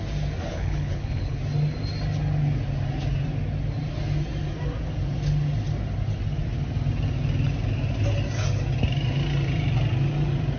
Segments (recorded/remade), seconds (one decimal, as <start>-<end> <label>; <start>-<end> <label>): 0.0-0.5 recorded; 0.5-1.4 remade; 1.4-10.6 recorded